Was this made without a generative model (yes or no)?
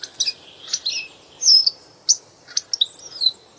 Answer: yes